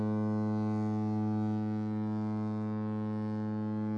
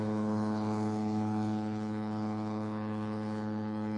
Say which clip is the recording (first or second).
first